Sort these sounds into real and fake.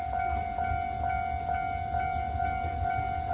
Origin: real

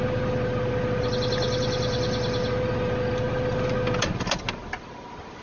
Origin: real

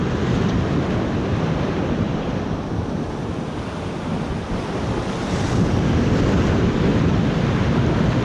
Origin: real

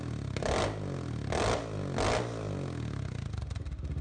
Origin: real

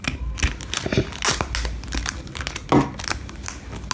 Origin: real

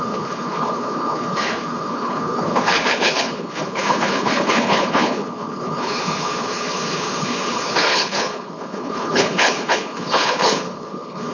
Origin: fake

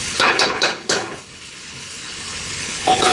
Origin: fake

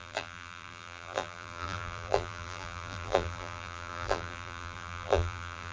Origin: fake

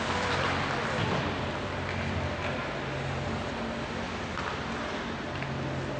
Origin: real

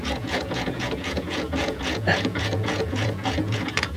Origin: fake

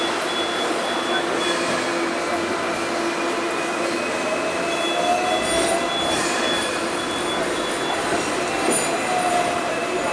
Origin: real